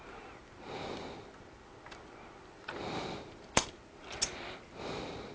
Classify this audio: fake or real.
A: real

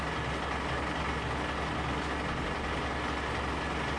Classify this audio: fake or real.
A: real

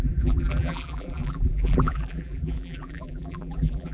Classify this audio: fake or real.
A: fake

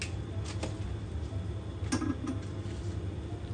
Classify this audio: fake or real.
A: real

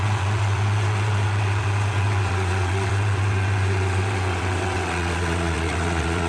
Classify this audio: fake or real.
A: fake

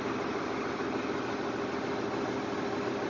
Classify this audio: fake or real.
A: real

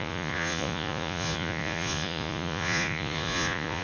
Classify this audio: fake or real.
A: fake